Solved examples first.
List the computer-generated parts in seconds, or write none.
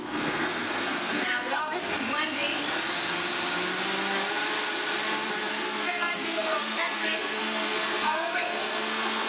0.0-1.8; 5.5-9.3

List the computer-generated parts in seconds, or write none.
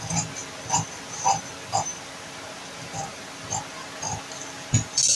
none